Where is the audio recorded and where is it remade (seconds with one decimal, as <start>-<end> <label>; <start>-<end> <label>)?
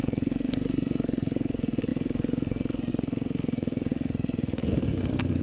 0.0-5.4 remade